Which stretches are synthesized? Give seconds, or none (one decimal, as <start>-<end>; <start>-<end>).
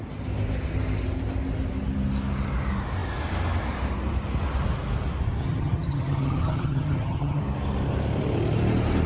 5.4-7.4